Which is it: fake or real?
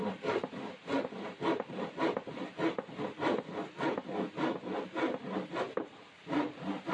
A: real